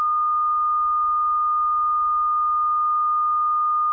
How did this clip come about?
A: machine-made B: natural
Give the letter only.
A